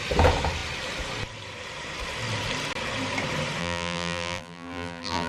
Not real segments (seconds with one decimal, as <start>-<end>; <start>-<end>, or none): 3.6-5.3